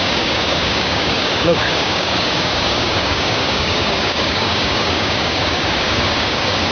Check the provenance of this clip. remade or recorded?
remade